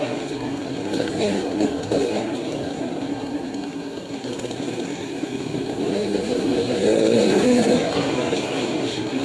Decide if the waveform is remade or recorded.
remade